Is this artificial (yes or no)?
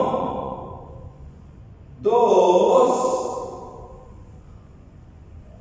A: yes